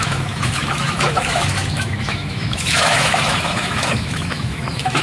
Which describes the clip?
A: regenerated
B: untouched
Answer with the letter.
A